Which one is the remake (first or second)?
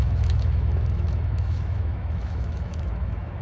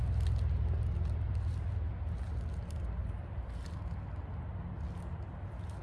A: first